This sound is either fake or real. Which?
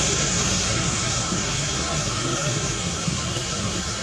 fake